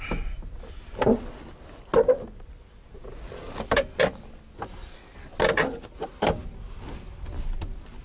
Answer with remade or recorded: recorded